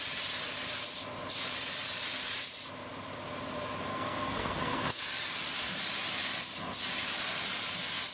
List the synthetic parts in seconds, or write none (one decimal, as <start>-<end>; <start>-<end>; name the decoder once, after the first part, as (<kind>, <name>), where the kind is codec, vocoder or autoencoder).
3.9-5.0 (codec, SNAC)